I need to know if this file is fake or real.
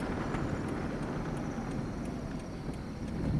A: real